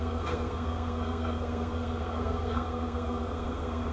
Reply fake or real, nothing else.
fake